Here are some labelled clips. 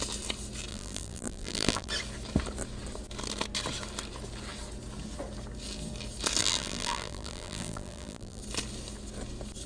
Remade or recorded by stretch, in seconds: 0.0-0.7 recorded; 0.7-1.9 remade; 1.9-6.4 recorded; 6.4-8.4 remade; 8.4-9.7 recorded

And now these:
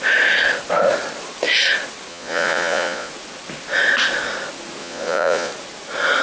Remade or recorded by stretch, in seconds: 0.0-2.1 recorded; 2.1-3.1 remade; 3.1-4.8 recorded; 4.8-5.5 remade; 5.5-6.2 recorded

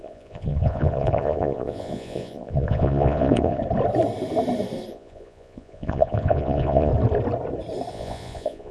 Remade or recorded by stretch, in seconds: 0.0-3.6 remade; 3.6-4.9 recorded; 4.9-6.9 remade; 6.9-7.9 recorded; 7.9-8.7 remade

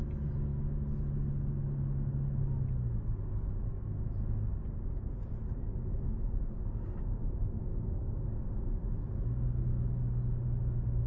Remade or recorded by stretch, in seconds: 0.0-7.7 recorded; 7.7-8.5 remade; 8.5-11.1 recorded

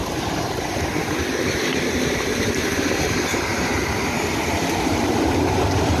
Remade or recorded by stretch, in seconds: 0.0-6.0 remade